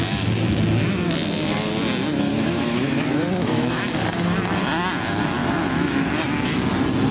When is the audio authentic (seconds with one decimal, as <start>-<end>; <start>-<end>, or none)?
0.0-2.3; 3.8-5.4; 6.2-7.1